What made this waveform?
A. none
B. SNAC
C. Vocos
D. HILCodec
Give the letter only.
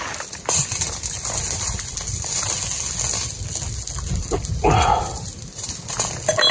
A